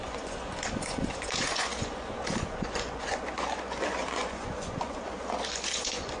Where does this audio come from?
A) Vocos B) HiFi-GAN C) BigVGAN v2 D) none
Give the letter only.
A